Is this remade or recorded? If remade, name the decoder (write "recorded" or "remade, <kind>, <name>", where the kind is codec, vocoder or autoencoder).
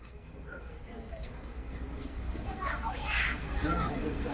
remade, codec, SNAC